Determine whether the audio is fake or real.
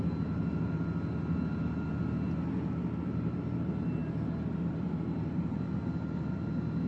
real